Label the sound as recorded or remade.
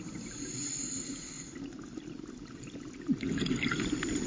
recorded